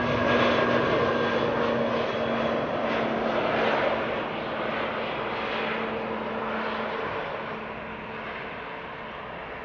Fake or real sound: real